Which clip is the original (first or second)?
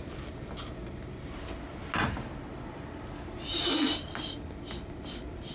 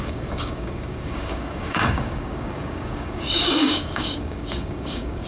first